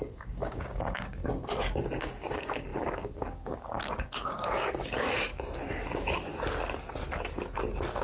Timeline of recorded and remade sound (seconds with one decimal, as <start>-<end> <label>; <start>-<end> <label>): 0.0-1.2 remade; 1.2-2.0 recorded; 2.0-5.3 remade; 5.3-8.0 recorded